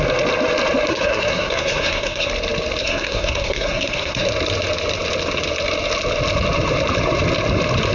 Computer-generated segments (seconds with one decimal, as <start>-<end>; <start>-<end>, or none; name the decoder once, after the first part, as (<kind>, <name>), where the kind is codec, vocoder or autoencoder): 0.9-2.3 (codec, SNAC); 2.8-4.3